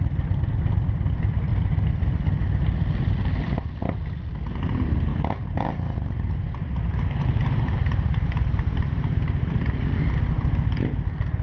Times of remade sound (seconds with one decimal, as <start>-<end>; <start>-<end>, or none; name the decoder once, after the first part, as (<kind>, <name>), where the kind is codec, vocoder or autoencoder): 5.1-9.8 (vocoder, BigVGAN v2)